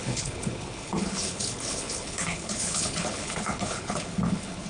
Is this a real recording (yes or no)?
no